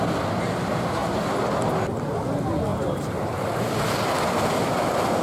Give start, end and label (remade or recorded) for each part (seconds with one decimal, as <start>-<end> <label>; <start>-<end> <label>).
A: 0.0-2.7 recorded; 2.7-3.8 remade; 3.8-5.2 recorded